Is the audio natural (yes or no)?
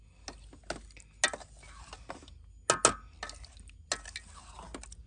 yes